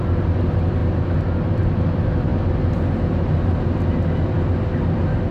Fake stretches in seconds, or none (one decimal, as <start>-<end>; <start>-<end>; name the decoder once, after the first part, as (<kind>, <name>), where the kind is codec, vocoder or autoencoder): none